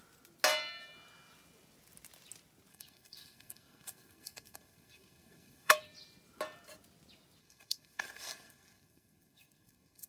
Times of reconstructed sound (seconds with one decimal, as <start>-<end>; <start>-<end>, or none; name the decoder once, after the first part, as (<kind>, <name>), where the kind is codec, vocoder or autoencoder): 2.7-5.8 (codec, SNAC); 7.4-10.1